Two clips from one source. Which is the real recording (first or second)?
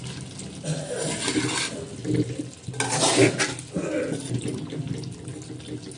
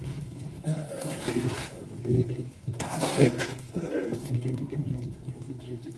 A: first